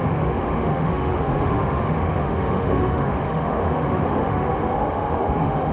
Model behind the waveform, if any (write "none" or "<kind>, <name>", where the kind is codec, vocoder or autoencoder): autoencoder, DAC-VAE